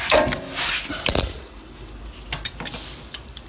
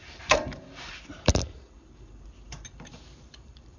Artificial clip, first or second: second